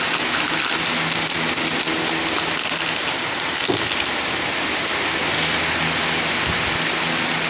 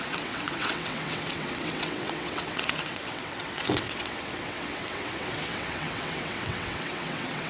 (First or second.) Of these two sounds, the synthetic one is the second